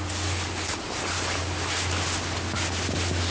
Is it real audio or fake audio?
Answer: real